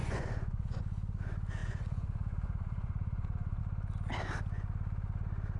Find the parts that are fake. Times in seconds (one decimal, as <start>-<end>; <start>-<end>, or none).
0.0-0.8; 1.6-3.6